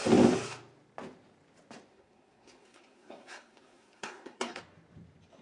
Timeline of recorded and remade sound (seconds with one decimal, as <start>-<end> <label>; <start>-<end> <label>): 0.0-1.9 recorded; 1.9-4.6 remade; 4.6-5.4 recorded